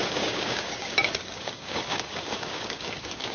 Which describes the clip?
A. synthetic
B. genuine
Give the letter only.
A